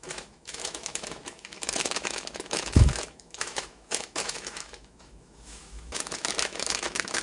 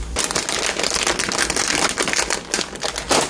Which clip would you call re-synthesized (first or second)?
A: first